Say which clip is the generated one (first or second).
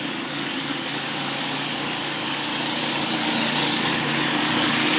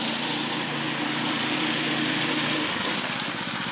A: first